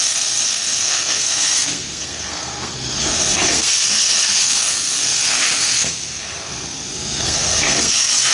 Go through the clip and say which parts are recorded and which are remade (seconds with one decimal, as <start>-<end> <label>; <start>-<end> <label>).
0.0-8.3 remade